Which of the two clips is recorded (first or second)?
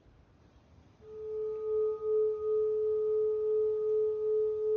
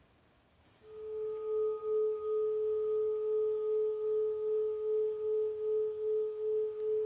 first